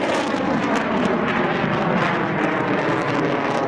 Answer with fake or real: real